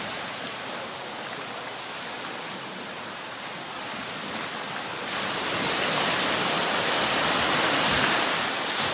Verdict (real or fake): real